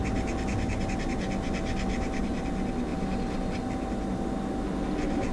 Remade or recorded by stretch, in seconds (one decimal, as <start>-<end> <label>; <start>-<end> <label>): 0.0-5.3 recorded